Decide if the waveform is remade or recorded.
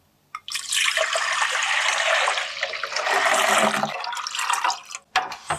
recorded